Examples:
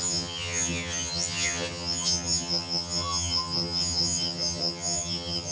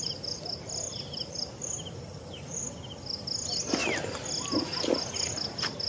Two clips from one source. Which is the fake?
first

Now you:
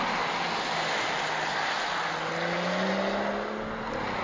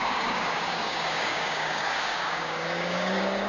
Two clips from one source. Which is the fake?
second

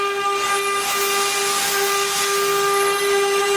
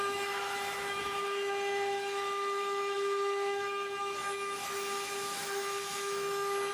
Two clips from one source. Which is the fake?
second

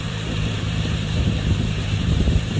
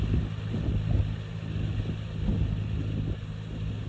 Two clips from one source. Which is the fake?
first